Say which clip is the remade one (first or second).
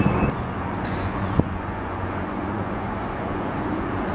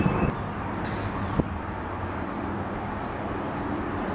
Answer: first